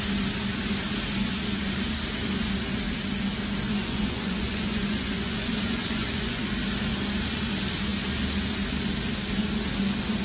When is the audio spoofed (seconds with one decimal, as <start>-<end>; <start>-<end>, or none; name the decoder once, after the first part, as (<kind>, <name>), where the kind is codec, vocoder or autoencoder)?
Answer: 3.7-6.4 (vocoder, Vocos)